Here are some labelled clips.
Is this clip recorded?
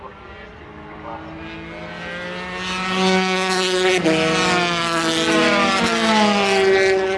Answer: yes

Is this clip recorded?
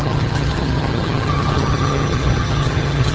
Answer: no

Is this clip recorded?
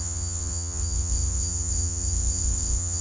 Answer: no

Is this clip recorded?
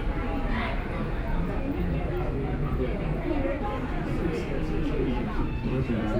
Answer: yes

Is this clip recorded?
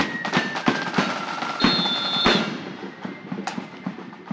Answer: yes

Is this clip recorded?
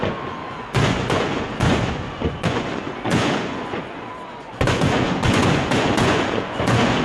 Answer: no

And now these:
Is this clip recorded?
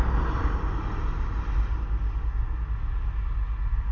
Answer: yes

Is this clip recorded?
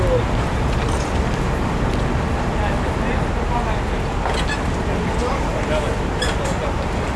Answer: yes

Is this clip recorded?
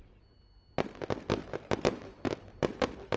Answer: no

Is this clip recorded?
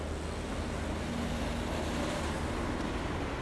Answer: yes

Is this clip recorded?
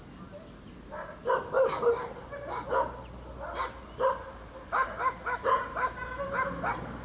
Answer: yes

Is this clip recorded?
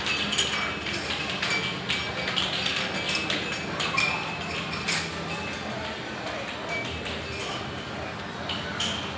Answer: yes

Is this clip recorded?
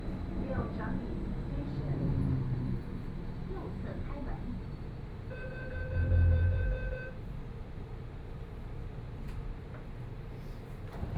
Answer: no